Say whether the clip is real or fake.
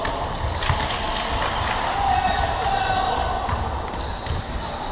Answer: real